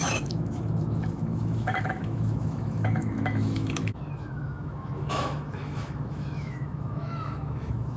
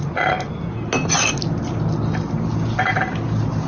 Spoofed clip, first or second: first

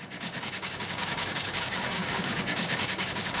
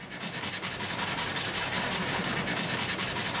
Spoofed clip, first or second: first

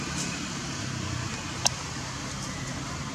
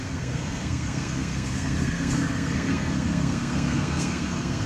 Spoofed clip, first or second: second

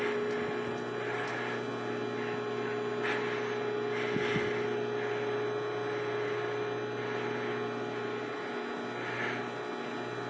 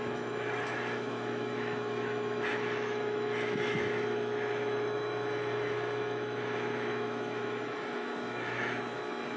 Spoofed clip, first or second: second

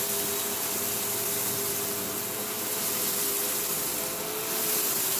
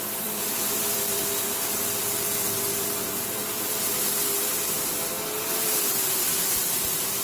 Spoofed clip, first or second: second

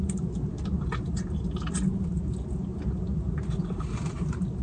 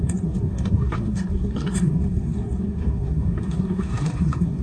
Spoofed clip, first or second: second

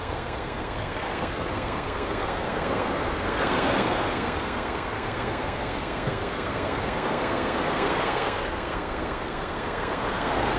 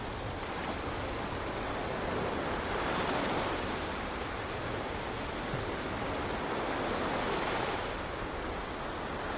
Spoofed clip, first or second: first